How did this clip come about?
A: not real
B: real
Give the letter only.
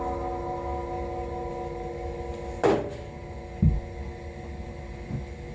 B